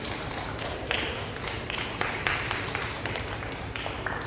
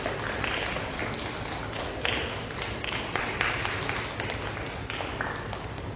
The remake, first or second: first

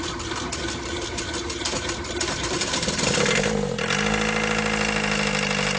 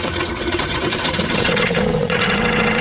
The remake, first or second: second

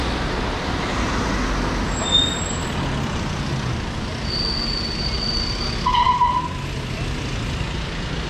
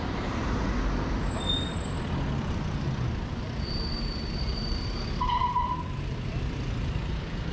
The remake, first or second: second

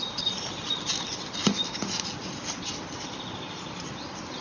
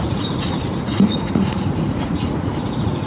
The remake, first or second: second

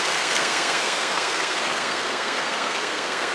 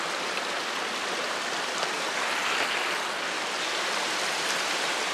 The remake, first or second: first